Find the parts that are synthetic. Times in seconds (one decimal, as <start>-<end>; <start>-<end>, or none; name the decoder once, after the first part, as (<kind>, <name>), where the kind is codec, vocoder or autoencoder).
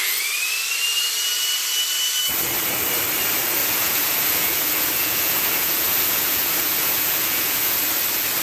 3.6-7.7 (vocoder, Vocos)